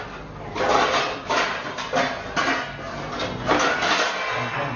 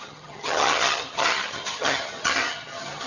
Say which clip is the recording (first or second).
first